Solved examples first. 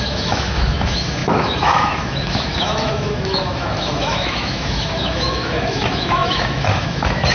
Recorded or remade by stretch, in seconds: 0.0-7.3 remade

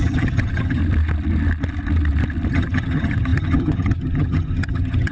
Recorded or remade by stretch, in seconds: 0.0-0.8 remade; 0.8-2.5 recorded; 2.5-5.1 remade

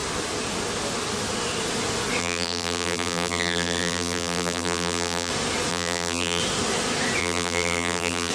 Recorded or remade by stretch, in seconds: 0.0-2.2 recorded; 2.2-5.3 remade; 5.3-5.7 recorded; 5.7-6.4 remade; 6.4-7.2 recorded; 7.2-8.3 remade

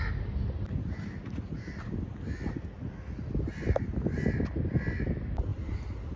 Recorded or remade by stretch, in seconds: 0.0-6.2 recorded

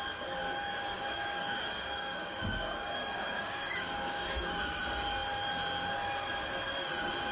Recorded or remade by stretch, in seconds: 0.0-0.4 recorded; 0.4-4.8 remade; 4.8-7.3 recorded

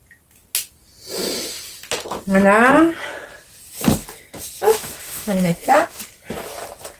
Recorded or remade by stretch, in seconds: 0.0-4.7 recorded; 4.7-6.0 remade; 6.0-7.0 recorded